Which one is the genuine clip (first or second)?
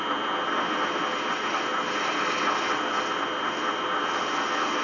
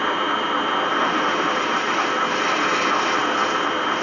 first